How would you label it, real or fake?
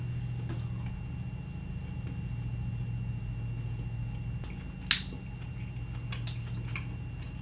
real